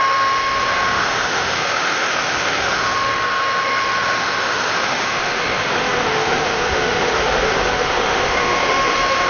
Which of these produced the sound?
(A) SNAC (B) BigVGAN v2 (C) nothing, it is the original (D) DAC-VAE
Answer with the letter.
D